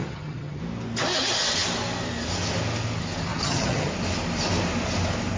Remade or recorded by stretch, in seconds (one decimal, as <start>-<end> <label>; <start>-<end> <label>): 0.0-0.6 remade; 0.6-3.3 recorded; 3.3-3.9 remade; 3.9-5.4 recorded